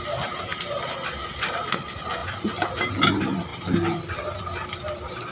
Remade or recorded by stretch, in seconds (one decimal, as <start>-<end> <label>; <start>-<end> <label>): 0.0-3.5 recorded; 3.5-5.3 remade